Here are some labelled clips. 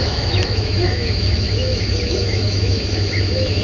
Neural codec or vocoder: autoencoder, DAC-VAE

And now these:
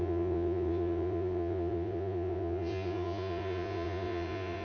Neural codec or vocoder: vocoder, Vocos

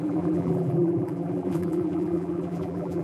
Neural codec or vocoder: vocoder, BigVGAN v2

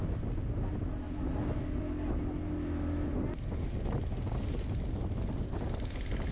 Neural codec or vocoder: none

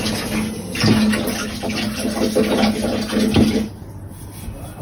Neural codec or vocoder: none